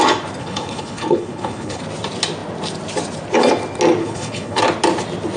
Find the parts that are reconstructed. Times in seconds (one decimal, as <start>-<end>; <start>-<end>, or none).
0.4-1.8; 4.0-4.6

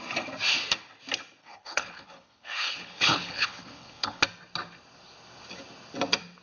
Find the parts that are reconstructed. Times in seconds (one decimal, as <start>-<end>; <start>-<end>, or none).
1.4-4.2

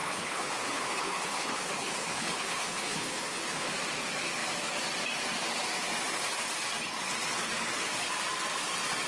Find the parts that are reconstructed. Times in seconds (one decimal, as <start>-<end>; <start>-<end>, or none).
0.0-3.7

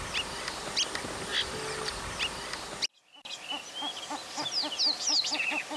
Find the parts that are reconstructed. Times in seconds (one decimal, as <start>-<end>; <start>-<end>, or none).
none